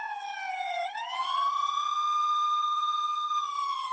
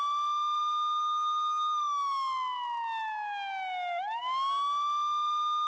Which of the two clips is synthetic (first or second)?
first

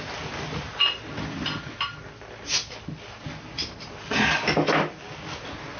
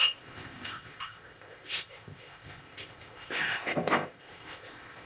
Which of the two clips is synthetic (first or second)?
second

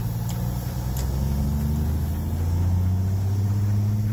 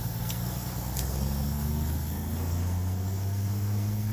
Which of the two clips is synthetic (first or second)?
second